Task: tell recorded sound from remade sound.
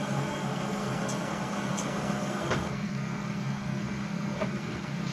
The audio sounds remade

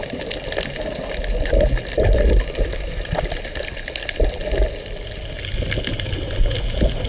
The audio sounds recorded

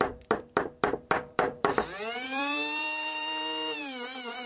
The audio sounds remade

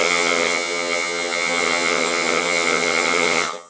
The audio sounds remade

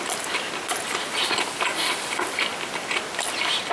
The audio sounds recorded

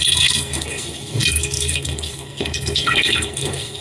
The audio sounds remade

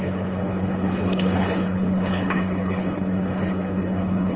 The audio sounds remade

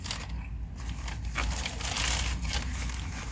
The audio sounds recorded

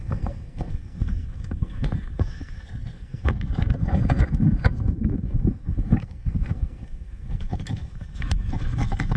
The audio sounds remade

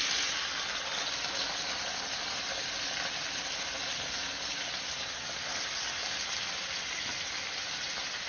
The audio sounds recorded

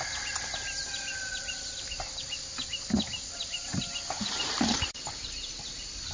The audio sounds recorded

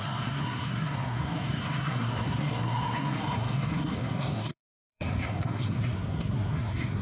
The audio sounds remade